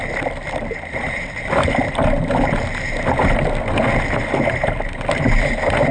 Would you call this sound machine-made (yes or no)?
no